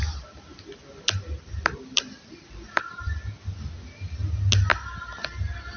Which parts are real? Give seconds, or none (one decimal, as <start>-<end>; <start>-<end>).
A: 0.0-4.7